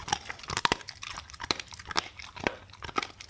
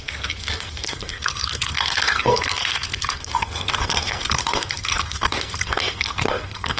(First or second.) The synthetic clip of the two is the second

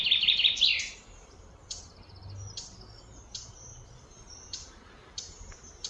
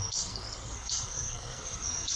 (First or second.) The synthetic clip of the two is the second